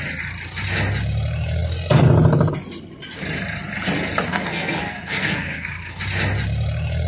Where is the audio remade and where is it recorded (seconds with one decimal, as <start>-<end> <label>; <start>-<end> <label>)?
0.0-4.3 recorded; 4.3-6.0 remade; 6.0-7.1 recorded